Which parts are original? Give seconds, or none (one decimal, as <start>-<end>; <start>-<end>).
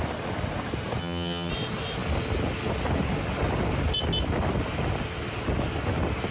0.0-1.0; 1.5-6.3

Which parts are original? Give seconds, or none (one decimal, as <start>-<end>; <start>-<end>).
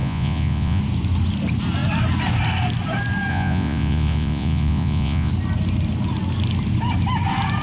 0.8-3.3; 5.3-7.6